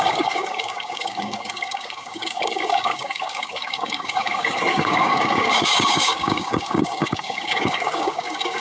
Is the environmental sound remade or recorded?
remade